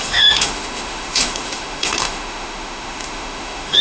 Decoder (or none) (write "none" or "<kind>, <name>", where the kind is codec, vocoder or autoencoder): autoencoder, DAC-VAE